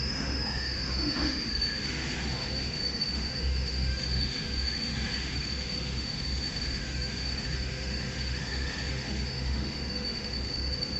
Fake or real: fake